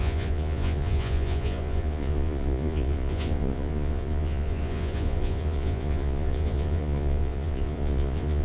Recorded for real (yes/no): no